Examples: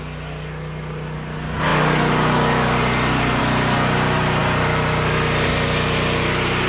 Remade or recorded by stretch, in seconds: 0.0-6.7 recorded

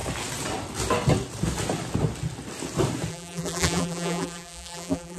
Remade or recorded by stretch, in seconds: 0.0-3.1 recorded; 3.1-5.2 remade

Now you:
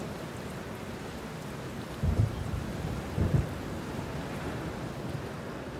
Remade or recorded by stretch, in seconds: 0.0-4.1 recorded; 4.1-5.8 remade

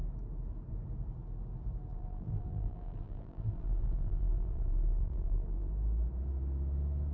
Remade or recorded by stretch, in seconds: 0.0-1.9 recorded; 1.9-5.7 remade; 5.7-7.1 recorded

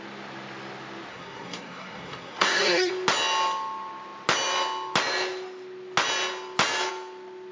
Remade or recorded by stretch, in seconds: 0.0-1.1 recorded; 1.1-2.9 remade; 2.9-7.5 recorded

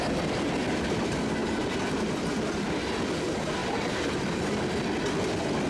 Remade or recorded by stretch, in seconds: 0.0-3.6 recorded; 3.6-4.6 remade; 4.6-5.7 recorded

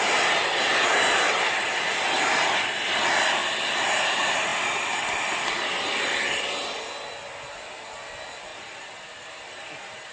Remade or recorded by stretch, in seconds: 0.0-0.7 recorded; 0.7-1.9 remade; 1.9-4.5 recorded; 4.5-6.5 remade; 6.5-8.5 recorded; 8.5-10.1 remade

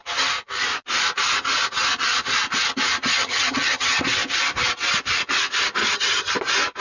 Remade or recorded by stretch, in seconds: 0.0-3.2 recorded; 3.2-4.0 remade; 4.0-5.8 recorded; 5.8-6.3 remade; 6.3-6.8 recorded